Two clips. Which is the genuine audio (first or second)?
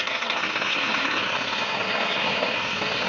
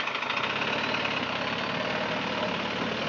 second